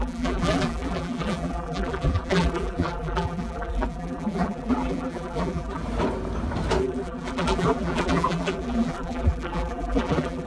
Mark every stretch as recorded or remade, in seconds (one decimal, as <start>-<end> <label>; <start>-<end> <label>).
0.0-5.8 remade; 5.8-6.8 recorded; 6.8-10.5 remade